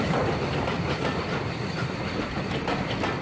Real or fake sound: real